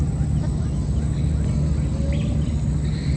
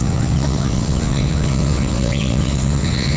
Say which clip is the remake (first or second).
second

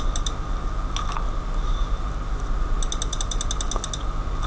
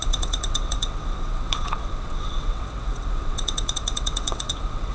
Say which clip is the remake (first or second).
second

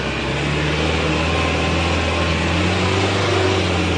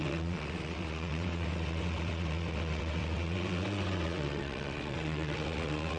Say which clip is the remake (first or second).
second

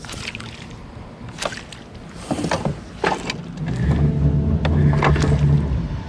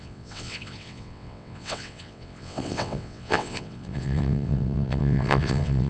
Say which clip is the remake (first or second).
second